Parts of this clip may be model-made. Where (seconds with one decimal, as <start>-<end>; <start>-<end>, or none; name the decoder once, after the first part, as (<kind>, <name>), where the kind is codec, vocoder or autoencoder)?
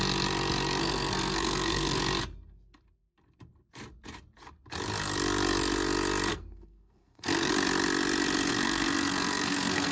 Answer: 0.8-2.0 (codec, SNAC); 6.3-7.5; 8.5-9.9